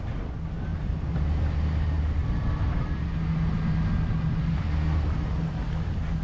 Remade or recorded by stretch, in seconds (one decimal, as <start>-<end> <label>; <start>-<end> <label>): 0.0-6.2 recorded